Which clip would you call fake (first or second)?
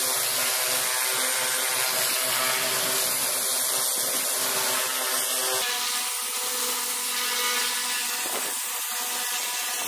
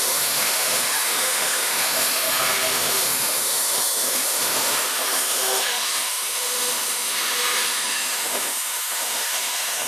second